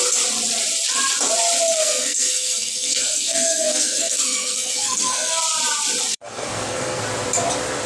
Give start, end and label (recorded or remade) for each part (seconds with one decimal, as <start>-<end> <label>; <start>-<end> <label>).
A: 0.0-1.8 recorded; 1.8-5.4 remade; 5.4-6.1 recorded; 6.1-7.0 remade; 7.0-7.9 recorded